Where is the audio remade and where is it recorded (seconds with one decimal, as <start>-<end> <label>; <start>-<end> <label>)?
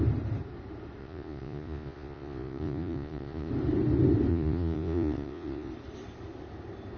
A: 0.0-1.0 recorded; 1.0-3.5 remade; 3.5-4.3 recorded; 4.3-5.7 remade; 5.7-7.0 recorded